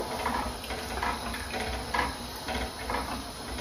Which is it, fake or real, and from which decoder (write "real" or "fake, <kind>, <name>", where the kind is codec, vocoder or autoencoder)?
fake, vocoder, BigVGAN v2